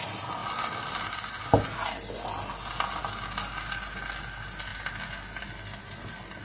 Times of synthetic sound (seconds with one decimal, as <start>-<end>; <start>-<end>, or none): none